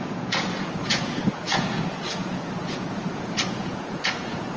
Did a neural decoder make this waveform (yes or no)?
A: yes